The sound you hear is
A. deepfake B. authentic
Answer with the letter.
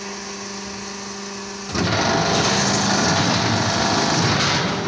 B